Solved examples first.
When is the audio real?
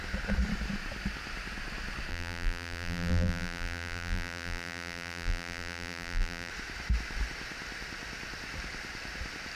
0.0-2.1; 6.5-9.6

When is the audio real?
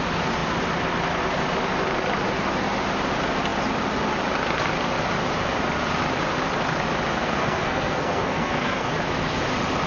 0.0-7.1; 8.9-9.9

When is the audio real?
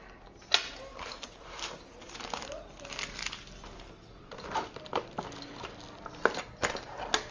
0.0-7.3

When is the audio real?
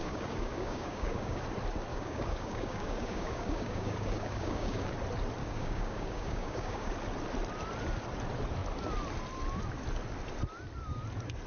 1.4-1.9; 4.9-5.4; 6.9-11.5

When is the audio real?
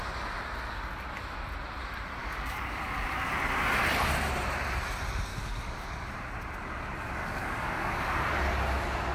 0.0-2.2; 3.3-5.3; 6.1-7.2; 8.2-9.1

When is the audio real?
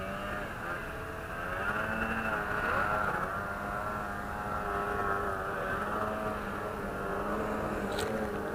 0.0-8.5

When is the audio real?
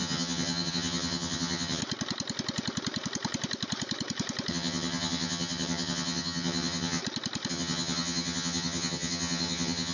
1.8-4.5; 7.0-7.5